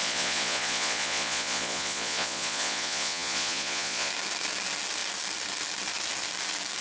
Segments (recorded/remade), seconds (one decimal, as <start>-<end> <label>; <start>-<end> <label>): 0.0-4.1 remade; 4.1-6.8 recorded